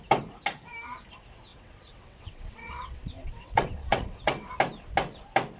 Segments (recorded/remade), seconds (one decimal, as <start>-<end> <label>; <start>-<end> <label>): 0.0-1.5 recorded; 1.5-4.5 remade; 4.5-5.6 recorded